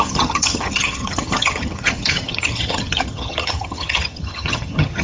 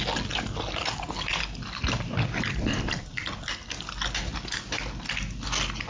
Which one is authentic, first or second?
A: second